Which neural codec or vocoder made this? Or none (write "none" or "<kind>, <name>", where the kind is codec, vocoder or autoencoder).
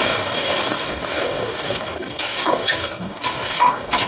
codec, DAC